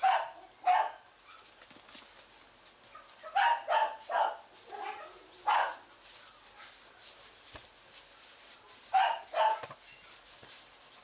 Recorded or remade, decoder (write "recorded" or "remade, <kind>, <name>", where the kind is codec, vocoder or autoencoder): recorded